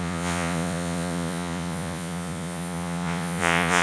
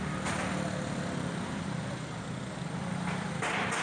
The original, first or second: second